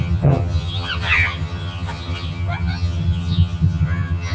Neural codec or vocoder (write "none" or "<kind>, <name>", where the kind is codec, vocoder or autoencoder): vocoder, HiFi-GAN